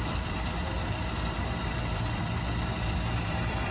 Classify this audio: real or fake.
fake